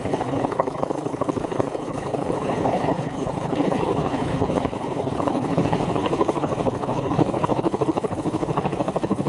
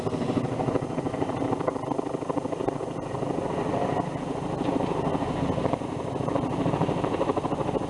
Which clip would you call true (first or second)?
second